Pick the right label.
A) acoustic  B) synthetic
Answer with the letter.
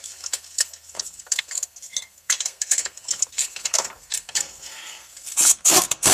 B